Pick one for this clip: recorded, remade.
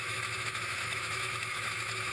remade